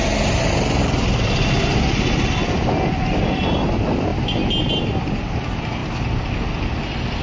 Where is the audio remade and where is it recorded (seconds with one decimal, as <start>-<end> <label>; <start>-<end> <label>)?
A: 0.0-7.2 recorded